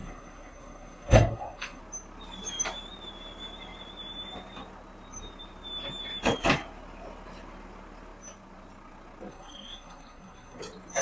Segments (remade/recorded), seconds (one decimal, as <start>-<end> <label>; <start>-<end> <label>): 0.0-1.8 remade; 1.8-9.3 recorded; 9.3-10.6 remade; 10.6-11.0 recorded